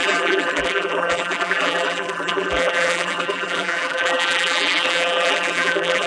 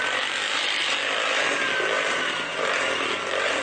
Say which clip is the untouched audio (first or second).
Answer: second